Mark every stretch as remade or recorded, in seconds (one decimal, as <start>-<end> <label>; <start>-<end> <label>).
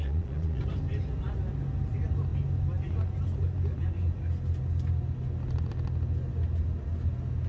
0.0-0.6 remade; 0.6-7.5 recorded